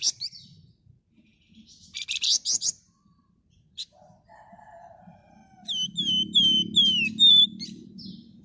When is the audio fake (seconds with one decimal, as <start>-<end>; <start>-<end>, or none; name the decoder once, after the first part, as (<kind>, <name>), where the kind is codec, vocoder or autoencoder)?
0.0-1.3 (vocoder, BigVGAN v2); 2.6-5.4; 7.3-8.4